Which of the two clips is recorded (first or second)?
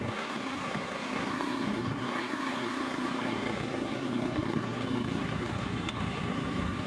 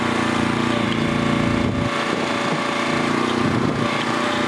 second